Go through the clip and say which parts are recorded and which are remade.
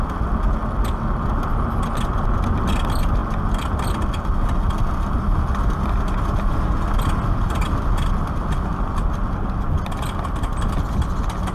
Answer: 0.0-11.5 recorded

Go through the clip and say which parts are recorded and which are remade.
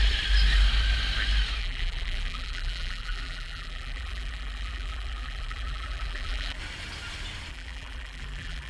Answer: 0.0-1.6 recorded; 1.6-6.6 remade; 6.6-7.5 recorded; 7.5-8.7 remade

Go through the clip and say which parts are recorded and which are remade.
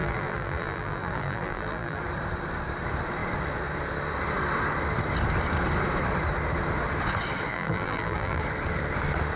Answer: 0.0-2.0 remade; 2.0-7.5 recorded; 7.5-8.4 remade; 8.4-9.4 recorded